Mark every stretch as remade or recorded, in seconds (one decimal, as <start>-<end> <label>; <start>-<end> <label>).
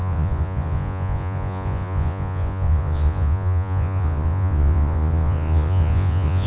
0.0-6.5 remade